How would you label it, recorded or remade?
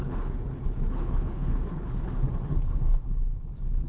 remade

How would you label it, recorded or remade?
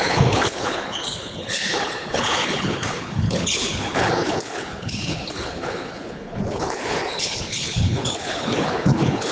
remade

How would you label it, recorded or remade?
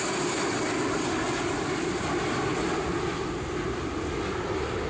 recorded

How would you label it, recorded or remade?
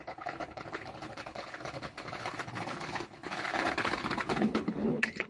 remade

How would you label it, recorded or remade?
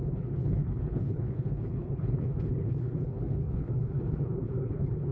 remade